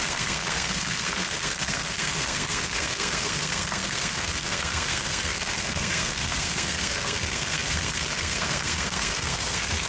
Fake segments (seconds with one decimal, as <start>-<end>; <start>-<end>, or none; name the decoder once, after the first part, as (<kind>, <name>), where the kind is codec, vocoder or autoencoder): 0.0-9.9 (codec, SNAC)